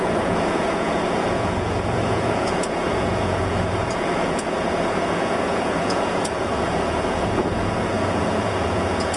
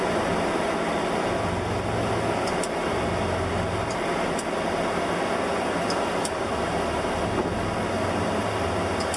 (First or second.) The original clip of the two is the second